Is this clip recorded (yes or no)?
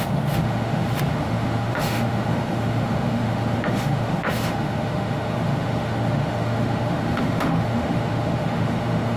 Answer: no